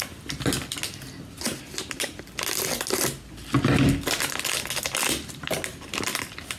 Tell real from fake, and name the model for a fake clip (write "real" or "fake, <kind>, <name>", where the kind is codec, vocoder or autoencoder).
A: real